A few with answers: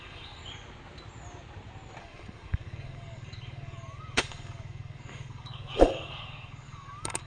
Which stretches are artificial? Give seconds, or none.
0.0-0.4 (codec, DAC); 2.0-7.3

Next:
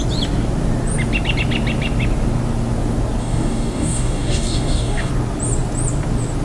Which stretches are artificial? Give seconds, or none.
3.2-5.1 (codec, DAC)